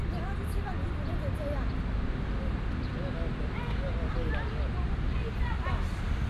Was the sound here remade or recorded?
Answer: recorded